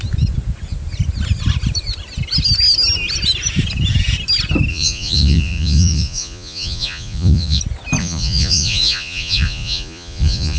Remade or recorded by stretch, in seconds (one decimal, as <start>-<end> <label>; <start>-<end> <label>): 0.0-4.7 recorded; 4.7-7.6 remade; 7.6-8.0 recorded; 8.0-10.6 remade

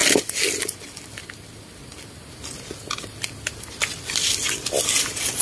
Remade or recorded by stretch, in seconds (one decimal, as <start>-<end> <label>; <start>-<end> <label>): 0.0-5.4 recorded

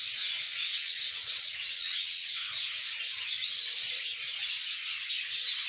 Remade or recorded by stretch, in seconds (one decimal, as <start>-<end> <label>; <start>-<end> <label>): 0.0-0.5 recorded; 0.5-2.6 remade; 2.6-5.7 recorded